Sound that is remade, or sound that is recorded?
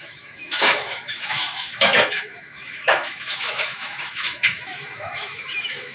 remade